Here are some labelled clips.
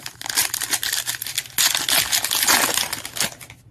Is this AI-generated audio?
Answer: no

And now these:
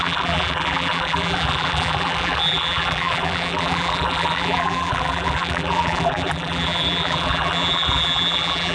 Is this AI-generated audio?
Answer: yes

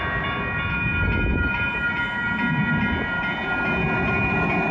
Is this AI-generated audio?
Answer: no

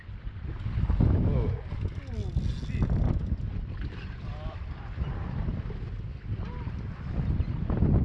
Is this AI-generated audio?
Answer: no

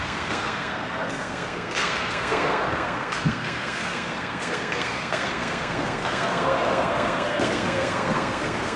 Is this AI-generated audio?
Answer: yes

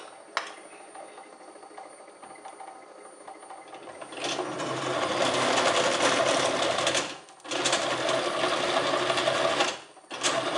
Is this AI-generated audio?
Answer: no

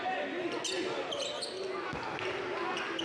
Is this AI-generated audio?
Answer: no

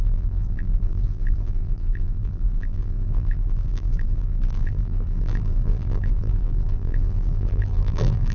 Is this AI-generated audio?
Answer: yes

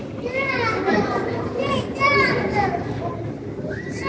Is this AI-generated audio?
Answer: no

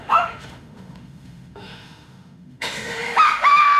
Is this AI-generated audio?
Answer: yes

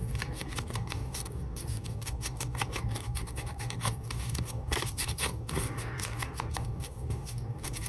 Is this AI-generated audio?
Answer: yes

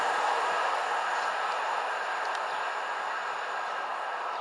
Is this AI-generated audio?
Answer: no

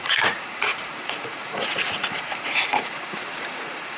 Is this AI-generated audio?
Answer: yes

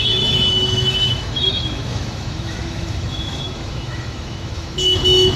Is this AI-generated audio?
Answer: yes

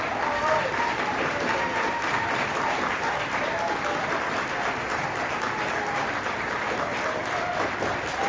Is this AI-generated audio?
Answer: no